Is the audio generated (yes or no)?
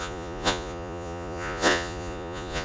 yes